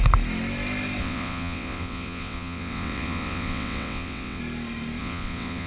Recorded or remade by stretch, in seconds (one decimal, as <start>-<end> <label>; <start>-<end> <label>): 0.0-1.0 recorded; 1.0-4.4 remade; 4.4-5.0 recorded; 5.0-5.7 remade